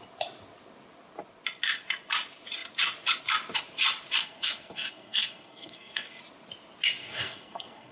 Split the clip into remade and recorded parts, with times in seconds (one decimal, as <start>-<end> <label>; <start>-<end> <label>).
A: 0.0-4.2 recorded; 4.2-6.2 remade; 6.2-7.0 recorded; 7.0-7.9 remade